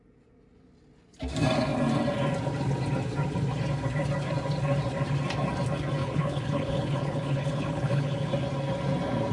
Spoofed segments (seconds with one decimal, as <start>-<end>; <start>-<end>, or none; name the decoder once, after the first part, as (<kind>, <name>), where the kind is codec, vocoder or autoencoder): 6.0-8.3 (codec, HILCodec)